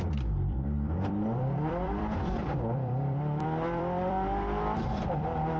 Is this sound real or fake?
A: fake